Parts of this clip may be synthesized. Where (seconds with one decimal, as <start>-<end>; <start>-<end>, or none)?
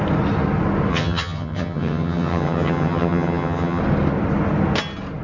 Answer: 0.9-3.8